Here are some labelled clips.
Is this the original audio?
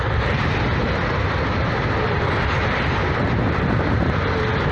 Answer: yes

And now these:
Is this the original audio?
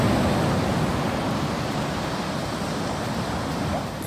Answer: yes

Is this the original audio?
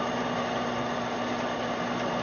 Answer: yes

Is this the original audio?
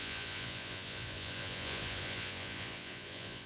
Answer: no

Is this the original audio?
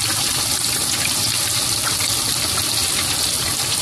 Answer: yes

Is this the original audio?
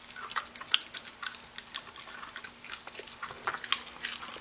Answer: yes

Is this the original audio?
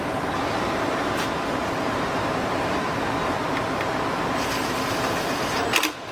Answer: yes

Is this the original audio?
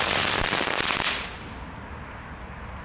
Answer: yes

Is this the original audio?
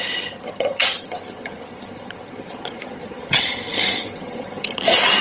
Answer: no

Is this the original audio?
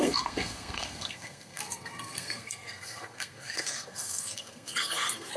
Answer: no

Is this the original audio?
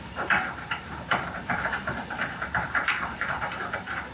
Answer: no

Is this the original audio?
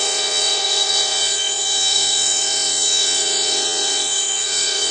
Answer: no